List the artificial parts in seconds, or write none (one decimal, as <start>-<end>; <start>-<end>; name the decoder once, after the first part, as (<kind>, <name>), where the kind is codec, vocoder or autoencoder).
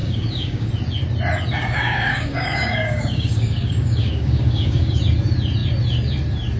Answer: 0.0-0.7 (codec, DAC); 1.6-5.0